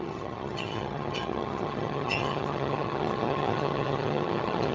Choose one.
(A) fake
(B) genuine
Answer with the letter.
A